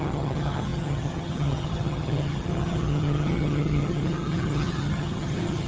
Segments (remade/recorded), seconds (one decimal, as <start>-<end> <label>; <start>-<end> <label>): 0.0-5.7 remade